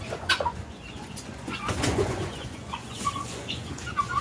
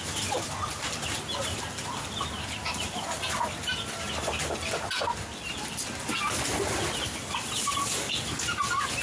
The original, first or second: second